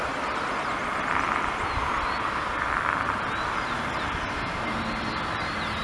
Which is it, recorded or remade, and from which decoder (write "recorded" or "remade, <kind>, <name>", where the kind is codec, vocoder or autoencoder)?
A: recorded